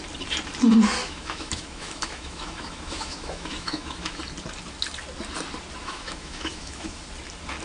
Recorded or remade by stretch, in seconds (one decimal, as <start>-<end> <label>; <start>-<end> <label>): 0.0-1.0 recorded; 1.0-4.2 remade; 4.2-5.8 recorded; 5.8-7.0 remade; 7.0-7.6 recorded